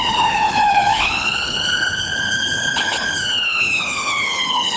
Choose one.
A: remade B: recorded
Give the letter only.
A